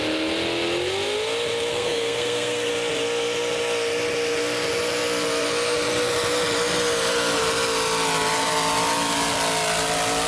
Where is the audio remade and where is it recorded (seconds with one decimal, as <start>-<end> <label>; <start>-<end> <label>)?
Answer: 0.0-1.7 recorded; 1.7-2.7 remade; 2.7-10.3 recorded